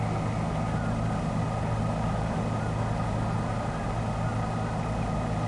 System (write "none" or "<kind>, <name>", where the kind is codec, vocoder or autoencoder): none